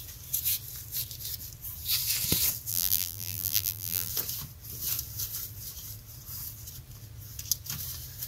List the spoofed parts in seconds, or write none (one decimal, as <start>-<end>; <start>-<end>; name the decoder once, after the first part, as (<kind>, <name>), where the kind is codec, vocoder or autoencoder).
2.7-4.1 (vocoder, BigVGAN v2)

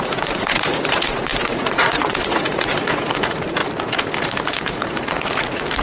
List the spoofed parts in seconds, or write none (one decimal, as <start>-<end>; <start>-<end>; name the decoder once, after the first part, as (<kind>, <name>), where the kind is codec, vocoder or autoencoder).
0.0-3.6 (vocoder, Vocos); 4.4-5.8

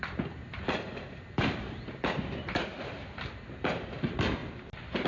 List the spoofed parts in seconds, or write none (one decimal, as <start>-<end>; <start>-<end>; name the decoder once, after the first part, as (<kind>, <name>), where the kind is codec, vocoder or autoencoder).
0.0-4.4 (vocoder, BigVGAN v2)

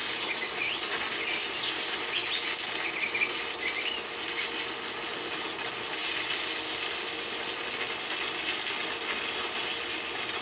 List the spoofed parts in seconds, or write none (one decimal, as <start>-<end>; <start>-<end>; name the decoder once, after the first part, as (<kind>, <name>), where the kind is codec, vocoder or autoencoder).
none

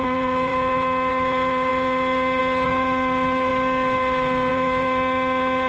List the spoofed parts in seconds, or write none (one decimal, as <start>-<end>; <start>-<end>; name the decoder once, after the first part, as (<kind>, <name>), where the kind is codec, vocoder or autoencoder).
0.0-3.5 (vocoder, Vocos); 4.5-5.7

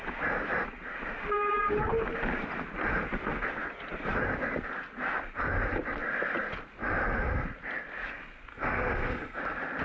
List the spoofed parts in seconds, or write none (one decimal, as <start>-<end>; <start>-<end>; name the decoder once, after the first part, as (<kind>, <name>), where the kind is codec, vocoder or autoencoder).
8.5-9.4 (codec, SNAC)

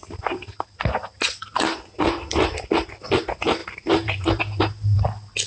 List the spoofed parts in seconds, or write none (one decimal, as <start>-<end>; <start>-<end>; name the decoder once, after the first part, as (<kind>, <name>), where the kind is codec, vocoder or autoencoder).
3.6-4.3 (vocoder, BigVGAN v2)